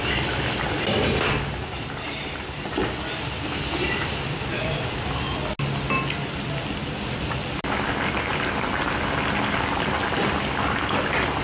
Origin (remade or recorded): recorded